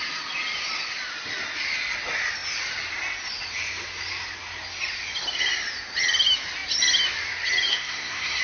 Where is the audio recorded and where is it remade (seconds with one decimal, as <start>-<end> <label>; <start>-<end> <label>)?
0.0-7.7 recorded; 7.7-8.4 remade